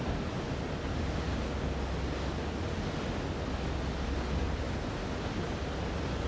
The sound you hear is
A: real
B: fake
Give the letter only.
A